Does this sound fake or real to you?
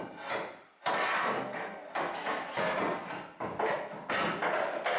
real